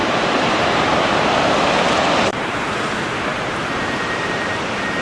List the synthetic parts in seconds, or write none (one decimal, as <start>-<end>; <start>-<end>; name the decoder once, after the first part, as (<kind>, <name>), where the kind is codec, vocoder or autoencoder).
0.0-1.2 (vocoder, BigVGAN v2); 2.3-2.9